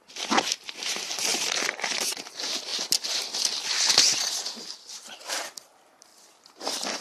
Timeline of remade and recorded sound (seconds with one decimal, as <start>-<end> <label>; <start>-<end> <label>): 0.0-6.1 recorded; 6.1-7.0 remade